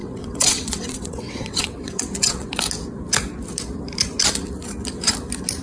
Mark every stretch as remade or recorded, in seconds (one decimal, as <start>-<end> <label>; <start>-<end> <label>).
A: 0.0-2.5 remade; 2.5-5.6 recorded

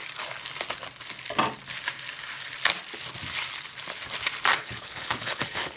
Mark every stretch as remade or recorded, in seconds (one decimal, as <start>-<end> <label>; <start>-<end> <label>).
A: 0.0-4.6 recorded; 4.6-5.8 remade

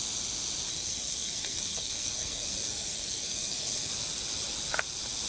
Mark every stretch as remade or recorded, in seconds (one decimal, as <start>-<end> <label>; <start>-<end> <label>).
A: 0.0-0.7 recorded; 0.7-3.9 remade; 3.9-5.3 recorded

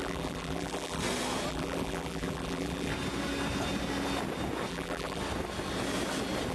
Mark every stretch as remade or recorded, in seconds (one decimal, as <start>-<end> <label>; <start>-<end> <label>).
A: 0.0-1.0 remade; 1.0-1.5 recorded; 1.5-2.9 remade; 2.9-4.7 recorded; 4.7-5.2 remade; 5.2-6.5 recorded

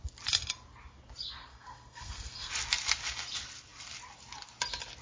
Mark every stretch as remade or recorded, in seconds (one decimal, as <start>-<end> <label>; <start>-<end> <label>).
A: 0.0-1.4 recorded; 1.4-2.5 remade; 2.5-5.0 recorded

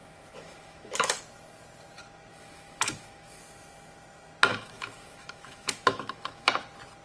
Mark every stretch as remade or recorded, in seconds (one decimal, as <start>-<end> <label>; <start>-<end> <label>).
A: 0.0-1.2 remade; 1.2-2.3 recorded; 2.3-3.4 remade; 3.4-4.5 recorded; 4.5-6.5 remade; 6.5-7.0 recorded

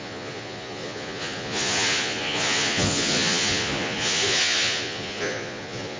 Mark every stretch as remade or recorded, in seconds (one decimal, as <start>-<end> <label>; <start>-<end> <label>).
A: 0.0-6.0 remade